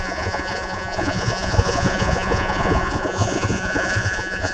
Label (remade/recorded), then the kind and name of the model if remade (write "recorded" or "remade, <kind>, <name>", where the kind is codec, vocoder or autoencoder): remade, vocoder, Vocos